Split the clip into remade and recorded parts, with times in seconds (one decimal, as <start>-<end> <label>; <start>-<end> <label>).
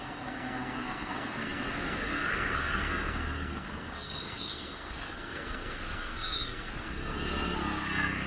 0.0-8.3 remade